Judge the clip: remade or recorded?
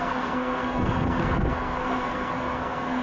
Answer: remade